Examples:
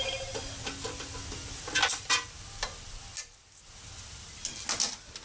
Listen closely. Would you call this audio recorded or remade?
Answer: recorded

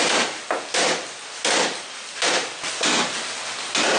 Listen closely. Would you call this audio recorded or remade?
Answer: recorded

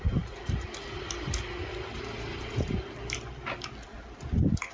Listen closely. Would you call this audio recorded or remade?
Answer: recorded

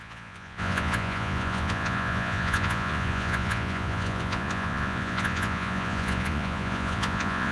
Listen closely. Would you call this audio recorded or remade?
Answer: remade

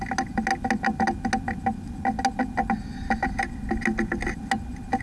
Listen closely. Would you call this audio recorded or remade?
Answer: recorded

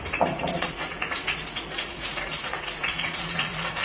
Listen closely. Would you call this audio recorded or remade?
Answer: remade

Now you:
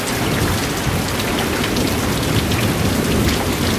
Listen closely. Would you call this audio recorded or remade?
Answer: recorded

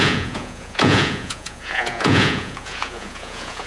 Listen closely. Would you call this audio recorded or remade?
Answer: remade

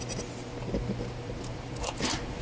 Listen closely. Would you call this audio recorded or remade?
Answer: recorded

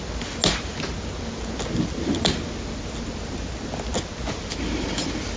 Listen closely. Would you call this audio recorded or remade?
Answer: recorded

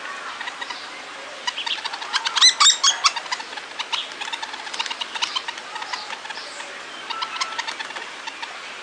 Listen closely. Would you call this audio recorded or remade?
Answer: recorded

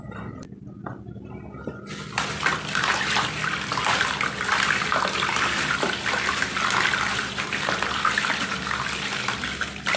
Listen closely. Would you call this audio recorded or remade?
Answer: recorded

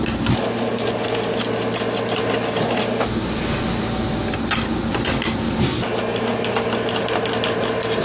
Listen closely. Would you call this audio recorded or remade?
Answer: recorded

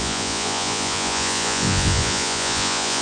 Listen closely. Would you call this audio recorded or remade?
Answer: remade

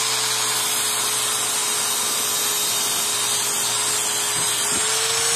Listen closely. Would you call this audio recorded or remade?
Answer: recorded